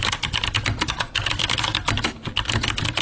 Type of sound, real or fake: real